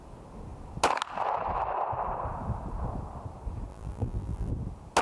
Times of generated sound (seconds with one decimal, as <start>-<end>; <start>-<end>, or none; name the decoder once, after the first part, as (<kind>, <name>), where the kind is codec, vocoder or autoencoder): 3.7-4.5 (vocoder, BigVGAN v2)